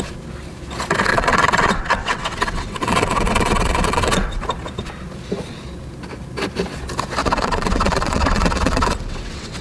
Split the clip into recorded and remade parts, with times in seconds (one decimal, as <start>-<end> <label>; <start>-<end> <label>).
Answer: 0.0-1.1 recorded; 1.1-4.4 remade; 4.4-7.2 recorded; 7.2-9.6 remade